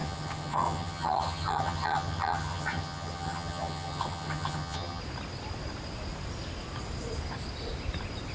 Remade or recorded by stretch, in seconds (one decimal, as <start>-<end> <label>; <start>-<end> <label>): 0.0-5.0 remade; 5.0-8.3 recorded